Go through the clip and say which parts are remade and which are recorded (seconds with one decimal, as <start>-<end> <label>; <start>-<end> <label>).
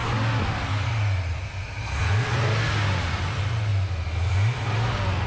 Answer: 0.0-5.3 recorded